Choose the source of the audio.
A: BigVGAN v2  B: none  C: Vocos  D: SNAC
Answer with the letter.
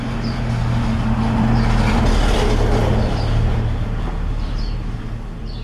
B